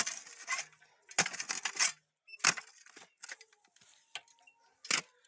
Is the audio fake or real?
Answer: real